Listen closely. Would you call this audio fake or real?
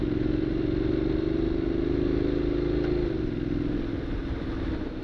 real